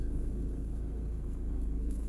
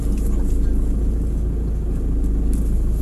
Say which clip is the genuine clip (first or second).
second